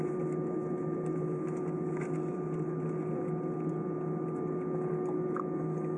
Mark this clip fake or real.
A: real